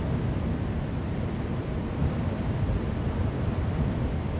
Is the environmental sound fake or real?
real